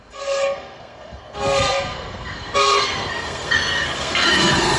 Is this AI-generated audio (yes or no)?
yes